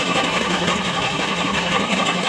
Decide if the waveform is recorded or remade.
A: remade